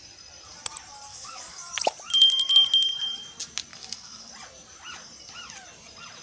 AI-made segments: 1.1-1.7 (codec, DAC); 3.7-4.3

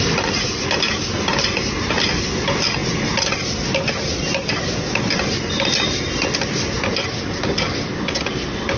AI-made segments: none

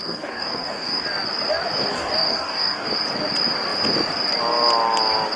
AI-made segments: 0.0-1.0 (codec, DAC); 1.9-2.9

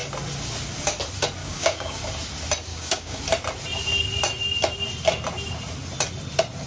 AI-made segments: 1.4-2.0 (codec, DAC); 2.7-3.2

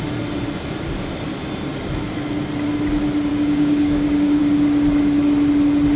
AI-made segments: 3.3-4.4 (codec, DAC)